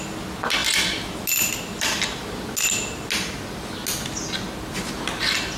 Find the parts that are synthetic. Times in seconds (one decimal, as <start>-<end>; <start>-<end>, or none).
none